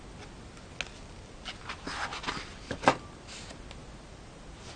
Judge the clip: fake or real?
real